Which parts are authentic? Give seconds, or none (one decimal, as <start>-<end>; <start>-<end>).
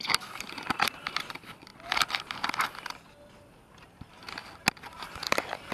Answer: 1.7-3.7; 4.4-4.9